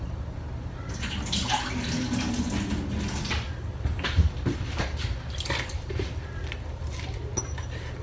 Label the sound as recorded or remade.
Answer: recorded